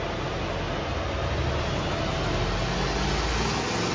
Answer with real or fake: real